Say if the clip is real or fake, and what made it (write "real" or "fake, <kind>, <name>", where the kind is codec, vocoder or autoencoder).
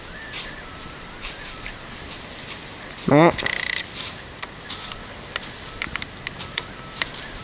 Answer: real